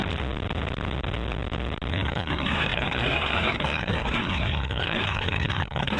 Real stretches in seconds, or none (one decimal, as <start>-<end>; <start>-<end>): 0.0-1.9